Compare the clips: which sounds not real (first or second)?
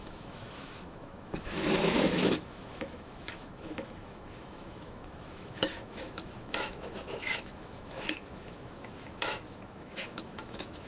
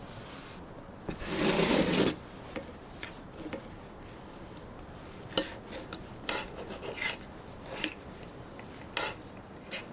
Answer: first